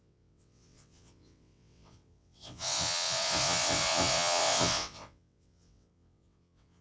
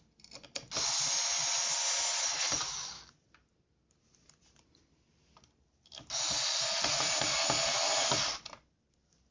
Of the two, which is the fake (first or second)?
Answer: first